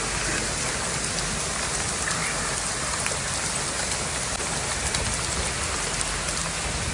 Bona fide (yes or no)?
yes